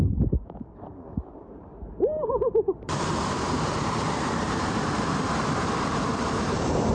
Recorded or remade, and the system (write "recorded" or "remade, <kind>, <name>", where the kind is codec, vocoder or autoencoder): remade, vocoder, BigVGAN v2